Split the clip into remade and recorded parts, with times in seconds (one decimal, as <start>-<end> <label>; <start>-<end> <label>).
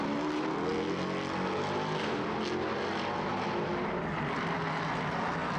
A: 0.0-5.6 recorded